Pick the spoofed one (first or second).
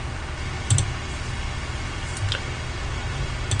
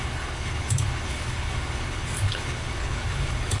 second